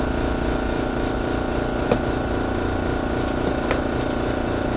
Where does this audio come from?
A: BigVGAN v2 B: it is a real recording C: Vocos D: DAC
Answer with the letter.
B